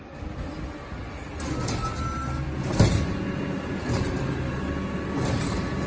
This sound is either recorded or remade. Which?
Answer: recorded